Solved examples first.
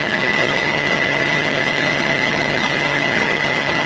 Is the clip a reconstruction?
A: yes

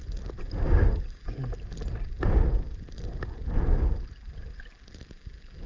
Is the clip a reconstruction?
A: no